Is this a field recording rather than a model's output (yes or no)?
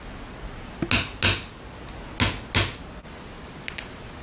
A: yes